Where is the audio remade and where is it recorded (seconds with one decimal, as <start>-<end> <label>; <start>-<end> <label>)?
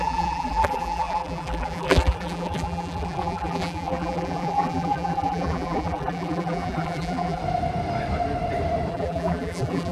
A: 0.0-7.4 remade; 7.4-8.9 recorded; 8.9-9.9 remade